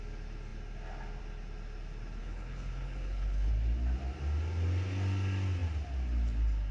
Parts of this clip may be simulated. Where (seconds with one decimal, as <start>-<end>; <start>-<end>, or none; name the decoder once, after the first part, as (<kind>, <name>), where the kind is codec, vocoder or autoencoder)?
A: 2.2-3.5 (codec, HILCodec)